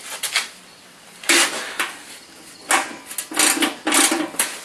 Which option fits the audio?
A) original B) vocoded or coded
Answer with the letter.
A